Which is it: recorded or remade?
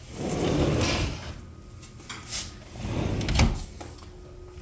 recorded